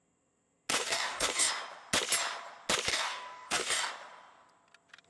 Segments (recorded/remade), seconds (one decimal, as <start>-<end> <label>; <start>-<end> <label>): 0.0-0.7 recorded; 0.7-1.5 remade; 1.5-2.9 recorded; 2.9-3.9 remade; 3.9-5.1 recorded